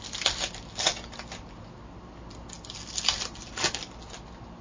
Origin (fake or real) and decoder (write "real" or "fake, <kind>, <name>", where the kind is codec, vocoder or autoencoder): real